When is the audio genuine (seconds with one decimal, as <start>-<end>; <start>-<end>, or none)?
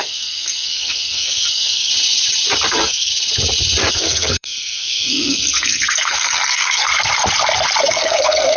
1.9-2.7; 3.1-3.9; 6.9-7.8